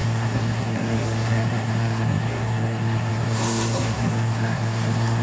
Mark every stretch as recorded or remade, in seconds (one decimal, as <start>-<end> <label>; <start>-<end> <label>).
0.0-5.2 remade